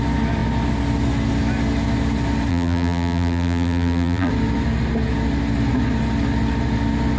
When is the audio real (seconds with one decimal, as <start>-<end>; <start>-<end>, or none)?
0.0-2.5; 4.3-7.2